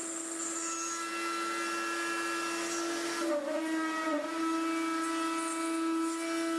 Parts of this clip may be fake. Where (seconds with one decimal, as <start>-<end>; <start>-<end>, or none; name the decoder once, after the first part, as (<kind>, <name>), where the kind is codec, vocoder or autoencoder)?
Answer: none